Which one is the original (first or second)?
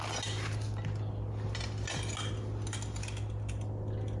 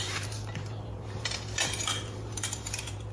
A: first